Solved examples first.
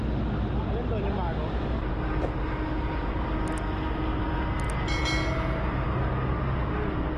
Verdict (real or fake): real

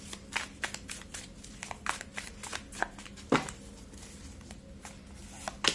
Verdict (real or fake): real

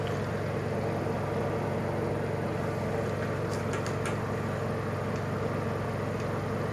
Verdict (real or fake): real